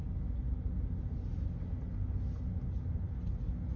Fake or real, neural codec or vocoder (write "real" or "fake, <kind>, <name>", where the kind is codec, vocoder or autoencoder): real